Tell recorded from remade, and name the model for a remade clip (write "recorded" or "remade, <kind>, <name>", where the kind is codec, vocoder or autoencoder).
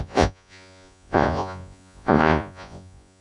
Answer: remade, vocoder, Vocos